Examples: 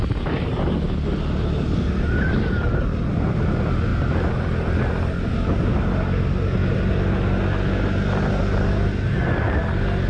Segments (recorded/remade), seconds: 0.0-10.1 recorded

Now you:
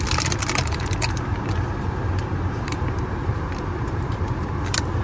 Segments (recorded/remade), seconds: 0.0-1.5 recorded; 1.5-4.5 remade; 4.5-5.0 recorded

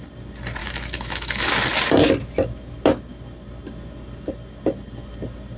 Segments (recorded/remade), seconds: 0.0-0.6 recorded; 0.6-1.5 remade; 1.5-5.6 recorded

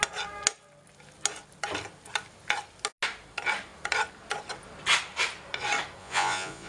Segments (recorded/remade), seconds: 0.0-6.0 recorded; 6.0-6.7 remade

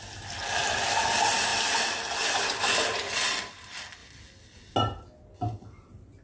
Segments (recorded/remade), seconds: 0.0-6.2 recorded

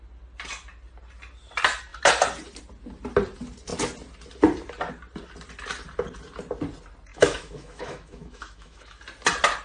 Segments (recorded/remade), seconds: 0.0-7.1 recorded; 7.1-9.0 remade; 9.0-9.6 recorded

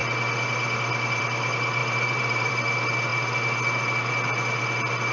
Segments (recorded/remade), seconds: 0.0-1.8 recorded; 1.8-2.5 remade; 2.5-5.1 recorded